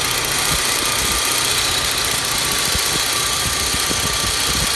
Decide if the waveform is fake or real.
real